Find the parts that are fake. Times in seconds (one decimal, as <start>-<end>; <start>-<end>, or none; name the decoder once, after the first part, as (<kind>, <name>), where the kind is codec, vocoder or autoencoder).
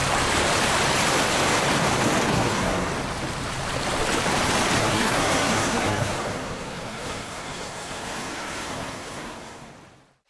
2.3-2.9 (codec, SNAC); 4.8-9.7